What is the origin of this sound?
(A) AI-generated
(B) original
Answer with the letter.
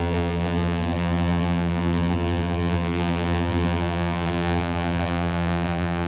A